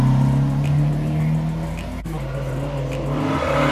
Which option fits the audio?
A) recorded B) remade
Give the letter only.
A